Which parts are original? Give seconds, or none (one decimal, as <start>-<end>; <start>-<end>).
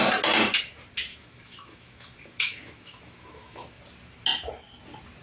0.0-1.1; 3.8-5.2